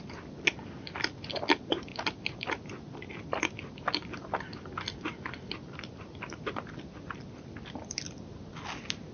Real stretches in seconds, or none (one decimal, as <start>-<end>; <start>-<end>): 0.0-9.1